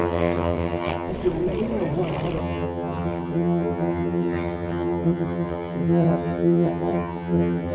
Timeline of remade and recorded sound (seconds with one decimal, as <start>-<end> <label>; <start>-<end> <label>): 0.0-1.1 remade; 1.1-2.4 recorded; 2.4-7.7 remade